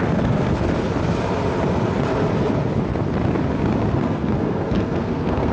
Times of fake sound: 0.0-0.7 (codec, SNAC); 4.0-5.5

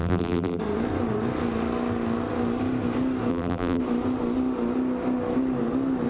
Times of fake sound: 0.0-0.6 (vocoder, BigVGAN v2); 3.3-3.8